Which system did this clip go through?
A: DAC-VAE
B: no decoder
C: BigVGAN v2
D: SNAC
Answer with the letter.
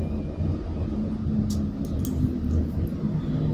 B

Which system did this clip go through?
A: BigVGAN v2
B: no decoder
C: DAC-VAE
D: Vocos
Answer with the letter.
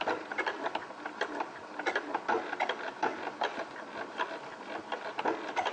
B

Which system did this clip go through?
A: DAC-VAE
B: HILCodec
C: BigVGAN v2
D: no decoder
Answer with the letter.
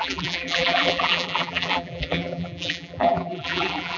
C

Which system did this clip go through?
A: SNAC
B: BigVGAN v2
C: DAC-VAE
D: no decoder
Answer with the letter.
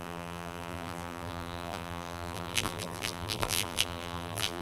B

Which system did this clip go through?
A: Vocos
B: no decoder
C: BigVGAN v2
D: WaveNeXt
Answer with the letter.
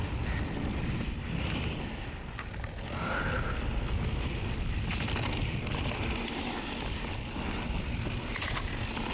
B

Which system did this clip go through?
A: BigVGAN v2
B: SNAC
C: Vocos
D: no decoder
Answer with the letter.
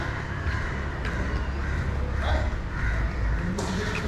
D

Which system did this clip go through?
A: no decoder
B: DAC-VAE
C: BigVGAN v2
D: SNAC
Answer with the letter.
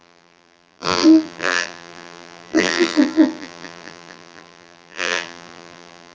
C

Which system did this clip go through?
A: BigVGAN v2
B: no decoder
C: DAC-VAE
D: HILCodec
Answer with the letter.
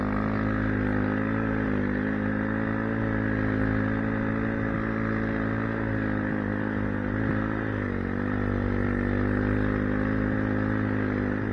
B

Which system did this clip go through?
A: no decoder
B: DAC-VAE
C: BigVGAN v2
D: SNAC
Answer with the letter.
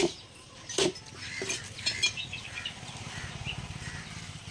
A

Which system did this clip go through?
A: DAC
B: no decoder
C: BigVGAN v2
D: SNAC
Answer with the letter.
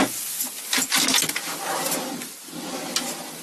B